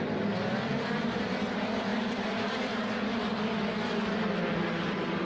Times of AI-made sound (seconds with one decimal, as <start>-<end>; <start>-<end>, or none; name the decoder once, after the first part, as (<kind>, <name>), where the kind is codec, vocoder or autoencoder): none